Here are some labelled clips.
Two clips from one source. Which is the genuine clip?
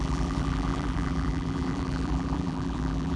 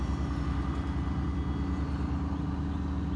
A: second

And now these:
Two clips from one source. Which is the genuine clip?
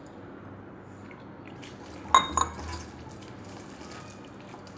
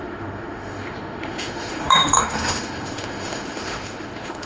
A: first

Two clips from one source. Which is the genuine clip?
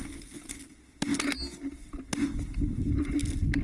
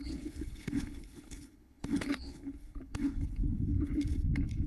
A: first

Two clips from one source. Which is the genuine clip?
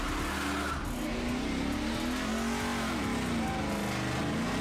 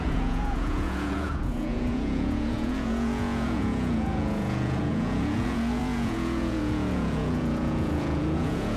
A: first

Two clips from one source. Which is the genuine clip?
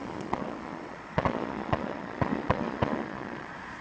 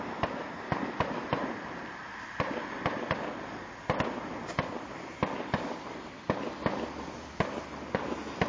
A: second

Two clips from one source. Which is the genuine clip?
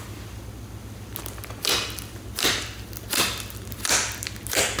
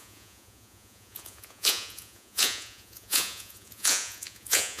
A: first